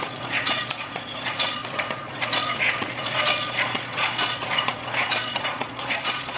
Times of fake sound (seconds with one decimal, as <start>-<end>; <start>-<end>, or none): 0.0-6.4